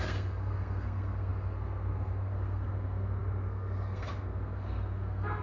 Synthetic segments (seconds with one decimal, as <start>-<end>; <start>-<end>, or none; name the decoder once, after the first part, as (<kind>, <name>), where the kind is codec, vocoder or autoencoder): 0.0-5.4 (codec, SNAC)